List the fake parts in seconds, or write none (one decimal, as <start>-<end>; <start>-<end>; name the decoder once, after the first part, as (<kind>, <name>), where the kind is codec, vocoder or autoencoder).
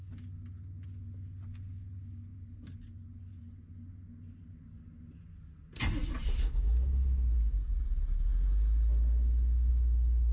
none